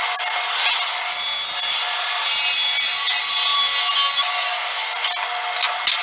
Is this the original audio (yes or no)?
yes